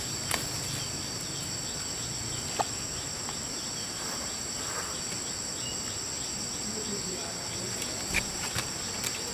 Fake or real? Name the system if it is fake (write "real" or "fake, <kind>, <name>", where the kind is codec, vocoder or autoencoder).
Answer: real